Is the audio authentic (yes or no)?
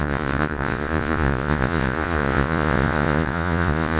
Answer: no